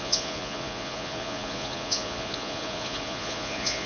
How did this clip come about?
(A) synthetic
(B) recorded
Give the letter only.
A